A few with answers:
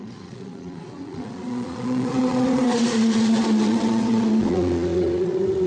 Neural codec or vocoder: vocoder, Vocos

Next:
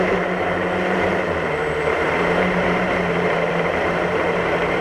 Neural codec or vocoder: vocoder, BigVGAN v2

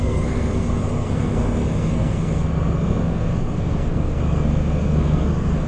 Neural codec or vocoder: codec, SNAC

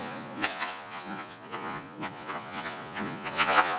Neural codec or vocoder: vocoder, Vocos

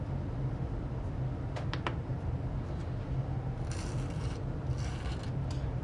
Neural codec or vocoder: vocoder, BigVGAN v2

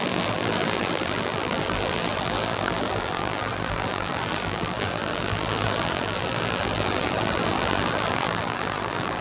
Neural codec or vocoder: vocoder, BigVGAN v2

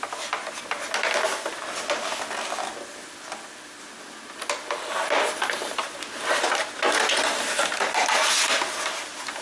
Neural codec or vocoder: none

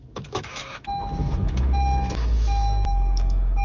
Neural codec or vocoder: autoencoder, DAC-VAE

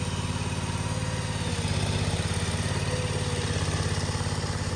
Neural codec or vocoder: none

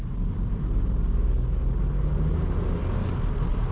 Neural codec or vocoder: none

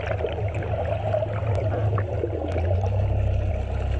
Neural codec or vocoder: none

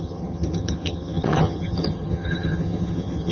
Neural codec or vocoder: vocoder, HiFi-GAN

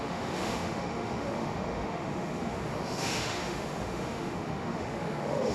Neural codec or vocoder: autoencoder, DAC-VAE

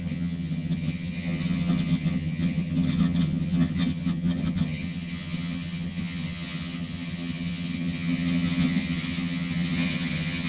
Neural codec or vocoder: vocoder, HiFi-GAN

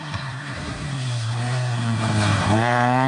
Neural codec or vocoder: codec, SNAC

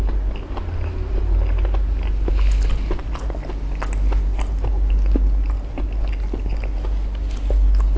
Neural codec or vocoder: none